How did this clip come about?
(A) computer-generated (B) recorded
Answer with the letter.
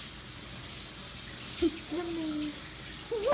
B